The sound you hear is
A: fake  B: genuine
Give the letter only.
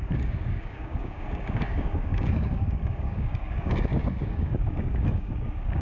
A